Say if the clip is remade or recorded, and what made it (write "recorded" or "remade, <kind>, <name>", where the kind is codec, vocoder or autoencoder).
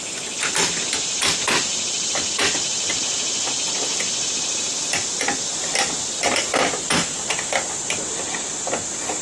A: recorded